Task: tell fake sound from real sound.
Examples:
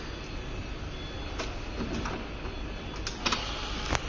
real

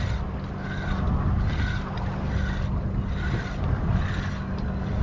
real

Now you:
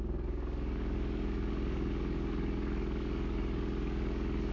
fake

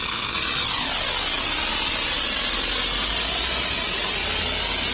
real